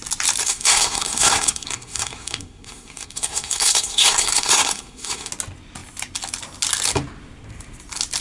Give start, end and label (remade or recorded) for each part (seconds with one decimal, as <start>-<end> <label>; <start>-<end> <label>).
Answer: 0.0-0.4 recorded; 0.4-5.3 remade; 5.3-8.2 recorded